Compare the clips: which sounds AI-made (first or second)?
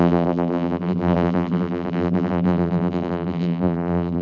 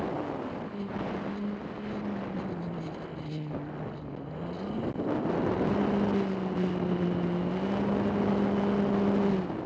first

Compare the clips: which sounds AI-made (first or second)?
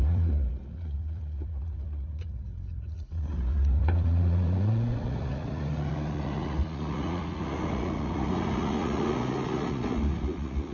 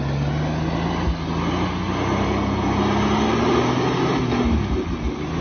first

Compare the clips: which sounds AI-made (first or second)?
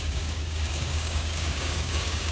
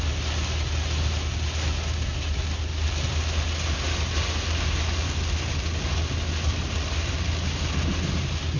first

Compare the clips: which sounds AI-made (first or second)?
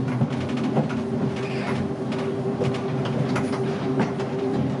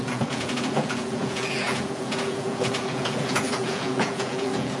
second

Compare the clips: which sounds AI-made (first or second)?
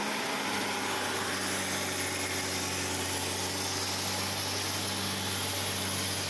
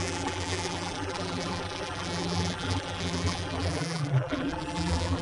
second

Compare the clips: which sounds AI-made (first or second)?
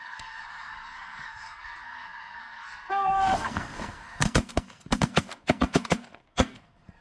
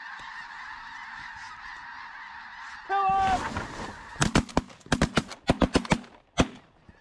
first